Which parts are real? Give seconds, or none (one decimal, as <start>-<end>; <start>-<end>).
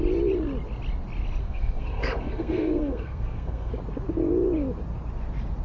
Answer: 0.0-1.4; 3.7-5.6